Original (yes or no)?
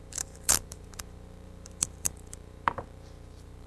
no